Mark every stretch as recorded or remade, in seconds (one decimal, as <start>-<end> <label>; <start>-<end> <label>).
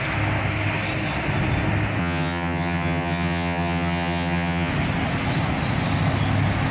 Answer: 0.0-2.0 recorded; 2.0-4.7 remade; 4.7-6.7 recorded